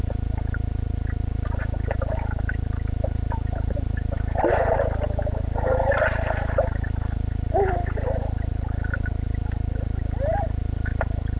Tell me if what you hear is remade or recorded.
recorded